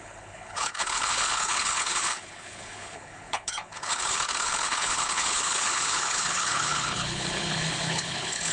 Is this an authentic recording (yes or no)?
no